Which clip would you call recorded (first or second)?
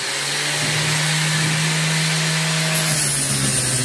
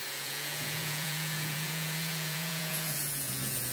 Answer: first